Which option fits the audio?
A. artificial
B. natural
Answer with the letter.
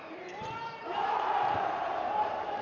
A